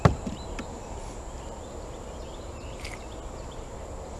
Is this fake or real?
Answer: real